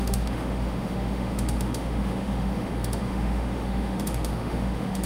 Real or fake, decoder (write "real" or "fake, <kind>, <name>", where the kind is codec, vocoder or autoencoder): fake, autoencoder, DAC-VAE